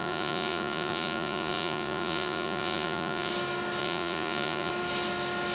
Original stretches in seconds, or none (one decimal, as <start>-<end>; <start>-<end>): 3.3-3.8; 4.7-5.5